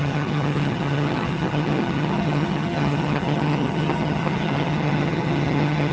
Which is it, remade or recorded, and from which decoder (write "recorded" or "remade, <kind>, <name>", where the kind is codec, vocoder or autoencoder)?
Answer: remade, vocoder, HiFi-GAN